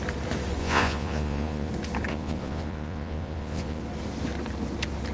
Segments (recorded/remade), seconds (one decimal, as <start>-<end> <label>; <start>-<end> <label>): 0.0-0.6 recorded; 0.6-1.7 remade; 1.7-2.1 recorded; 2.1-3.8 remade; 3.8-5.1 recorded